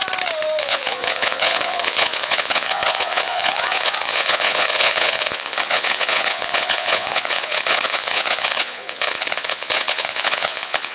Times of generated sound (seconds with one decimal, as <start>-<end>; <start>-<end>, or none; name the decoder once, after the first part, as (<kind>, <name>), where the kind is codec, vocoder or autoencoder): 0.6-10.9 (vocoder, Vocos)